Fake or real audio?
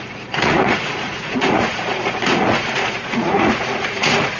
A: fake